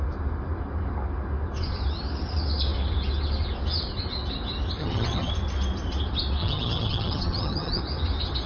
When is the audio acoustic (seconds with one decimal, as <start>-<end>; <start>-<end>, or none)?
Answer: 0.0-4.8; 5.3-6.4; 7.8-8.5